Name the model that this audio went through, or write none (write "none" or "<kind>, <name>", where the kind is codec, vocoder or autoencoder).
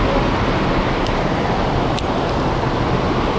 none